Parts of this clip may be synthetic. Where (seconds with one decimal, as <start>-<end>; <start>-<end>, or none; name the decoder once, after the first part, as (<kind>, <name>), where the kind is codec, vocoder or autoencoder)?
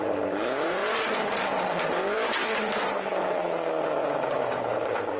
0.0-5.2 (vocoder, BigVGAN v2)